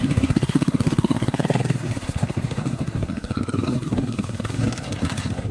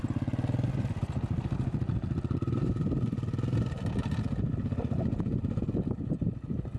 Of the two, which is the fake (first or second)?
first